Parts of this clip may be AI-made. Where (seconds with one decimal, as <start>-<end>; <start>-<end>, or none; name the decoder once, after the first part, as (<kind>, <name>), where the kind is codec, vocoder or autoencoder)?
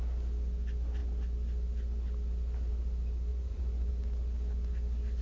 3.3-3.9 (vocoder, Vocos)